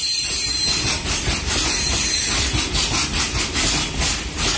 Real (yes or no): yes